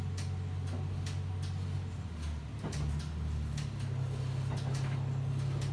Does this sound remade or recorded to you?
recorded